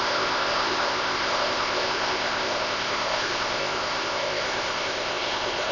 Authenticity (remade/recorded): remade